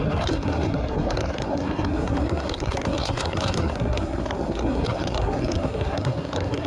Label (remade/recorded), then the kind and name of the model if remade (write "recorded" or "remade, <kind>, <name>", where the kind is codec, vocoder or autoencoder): remade, codec, SNAC